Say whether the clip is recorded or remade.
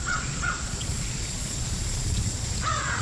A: remade